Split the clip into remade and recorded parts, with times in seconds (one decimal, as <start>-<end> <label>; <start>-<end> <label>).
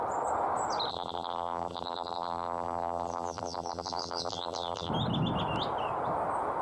0.0-0.9 recorded; 0.9-4.9 remade; 4.9-6.6 recorded